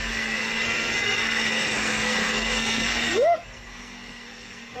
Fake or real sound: fake